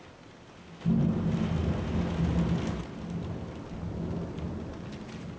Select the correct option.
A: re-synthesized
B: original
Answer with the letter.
B